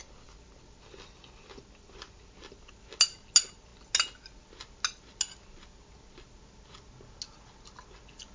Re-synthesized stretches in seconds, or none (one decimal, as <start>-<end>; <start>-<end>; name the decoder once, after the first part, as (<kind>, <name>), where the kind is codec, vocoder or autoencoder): none